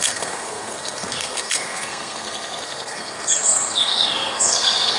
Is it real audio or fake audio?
fake